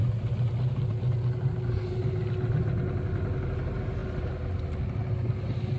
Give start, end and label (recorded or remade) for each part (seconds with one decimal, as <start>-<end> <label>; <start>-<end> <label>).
0.0-5.8 recorded